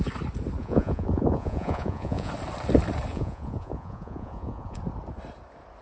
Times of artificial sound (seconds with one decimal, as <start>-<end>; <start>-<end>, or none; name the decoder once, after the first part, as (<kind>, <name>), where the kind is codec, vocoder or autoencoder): 0.6-2.3 (vocoder, Vocos); 3.1-4.8